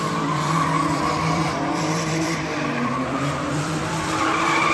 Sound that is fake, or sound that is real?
fake